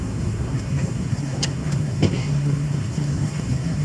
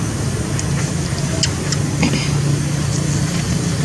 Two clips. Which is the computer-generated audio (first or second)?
first